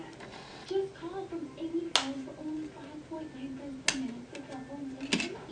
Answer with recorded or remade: recorded